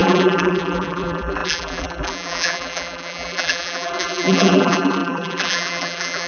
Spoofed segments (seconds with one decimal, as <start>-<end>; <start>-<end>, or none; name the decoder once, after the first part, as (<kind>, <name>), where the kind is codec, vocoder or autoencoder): 0.0-6.3 (vocoder, BigVGAN v2)